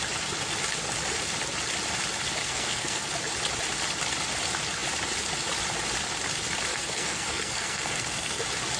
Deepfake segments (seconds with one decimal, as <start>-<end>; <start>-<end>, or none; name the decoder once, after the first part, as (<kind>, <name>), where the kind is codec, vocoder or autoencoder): 2.4-3.1 (codec, SNAC); 6.7-8.4